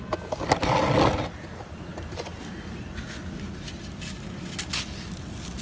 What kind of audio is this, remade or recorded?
recorded